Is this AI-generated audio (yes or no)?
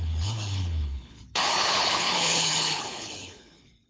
yes